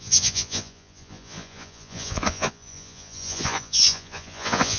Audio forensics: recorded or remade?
remade